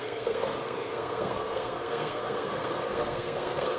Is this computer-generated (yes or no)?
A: yes